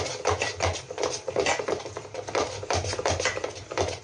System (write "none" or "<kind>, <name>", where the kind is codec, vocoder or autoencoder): none